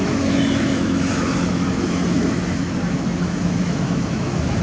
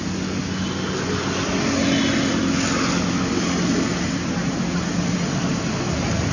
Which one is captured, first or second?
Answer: second